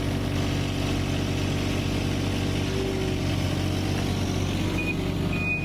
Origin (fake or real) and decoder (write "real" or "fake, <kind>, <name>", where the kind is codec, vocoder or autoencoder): real